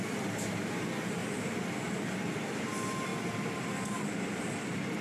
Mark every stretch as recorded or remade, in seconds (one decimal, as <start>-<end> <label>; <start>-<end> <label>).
0.0-5.0 recorded